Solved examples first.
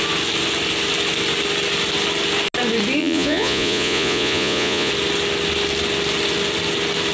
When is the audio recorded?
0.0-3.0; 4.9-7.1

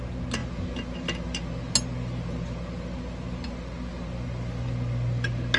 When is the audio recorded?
0.0-5.6

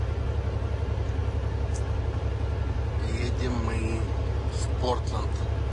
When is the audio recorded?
0.0-5.7

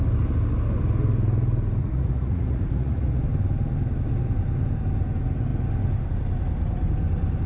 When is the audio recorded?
0.0-1.8; 3.2-7.5

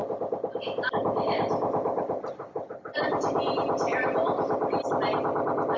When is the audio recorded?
0.0-5.8

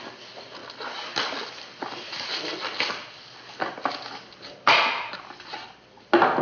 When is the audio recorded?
0.0-6.4